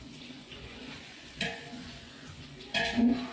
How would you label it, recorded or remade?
remade